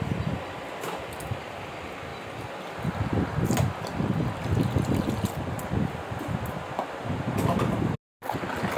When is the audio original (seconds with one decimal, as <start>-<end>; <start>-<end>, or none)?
0.0-8.8

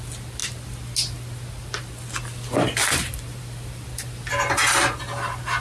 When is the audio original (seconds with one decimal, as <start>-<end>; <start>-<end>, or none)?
0.0-5.6

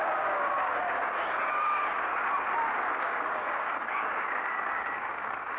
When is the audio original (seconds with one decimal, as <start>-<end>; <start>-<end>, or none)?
2.1-3.0

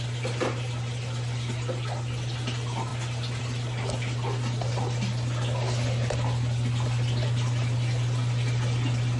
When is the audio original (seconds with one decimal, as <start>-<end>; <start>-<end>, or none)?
0.0-9.2

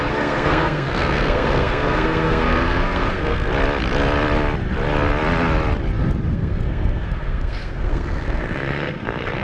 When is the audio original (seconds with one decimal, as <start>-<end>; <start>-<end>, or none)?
3.5-6.3